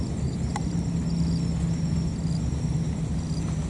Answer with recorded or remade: recorded